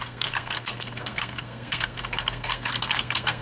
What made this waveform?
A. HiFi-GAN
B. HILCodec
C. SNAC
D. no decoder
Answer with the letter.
C